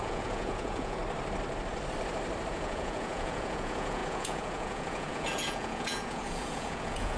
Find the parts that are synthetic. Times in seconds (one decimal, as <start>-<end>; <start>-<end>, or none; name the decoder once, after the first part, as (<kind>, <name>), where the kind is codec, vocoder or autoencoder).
0.0-1.0 (vocoder, Vocos); 2.5-7.2